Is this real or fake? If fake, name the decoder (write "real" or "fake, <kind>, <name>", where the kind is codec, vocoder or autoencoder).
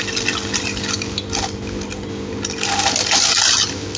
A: real